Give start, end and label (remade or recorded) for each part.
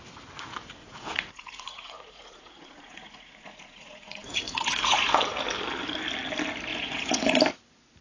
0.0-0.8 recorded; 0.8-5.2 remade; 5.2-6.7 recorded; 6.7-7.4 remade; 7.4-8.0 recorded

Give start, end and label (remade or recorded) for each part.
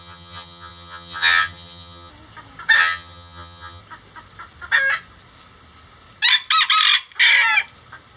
0.0-2.1 remade; 2.1-2.8 recorded; 2.8-3.8 remade; 3.8-8.2 recorded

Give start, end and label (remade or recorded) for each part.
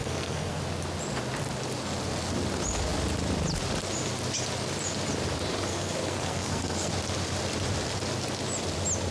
0.0-0.6 remade; 0.6-5.7 recorded; 5.7-6.9 remade; 6.9-9.1 recorded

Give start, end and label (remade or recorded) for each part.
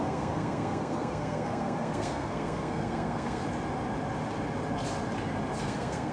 0.0-3.4 remade; 3.4-5.6 recorded; 5.6-6.1 remade